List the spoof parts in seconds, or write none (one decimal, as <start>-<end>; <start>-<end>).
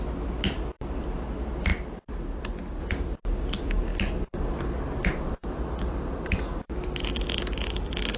none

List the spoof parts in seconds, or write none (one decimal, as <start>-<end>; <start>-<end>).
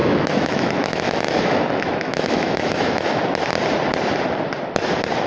0.0-3.2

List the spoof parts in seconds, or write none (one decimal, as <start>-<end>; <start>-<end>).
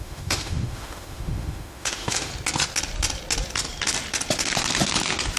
0.0-2.3